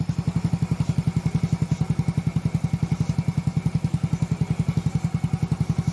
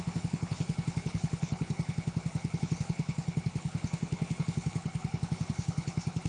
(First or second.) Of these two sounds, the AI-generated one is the second